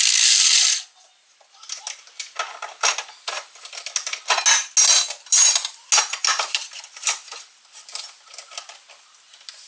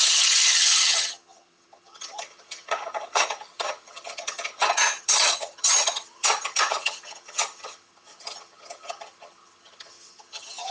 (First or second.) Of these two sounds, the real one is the first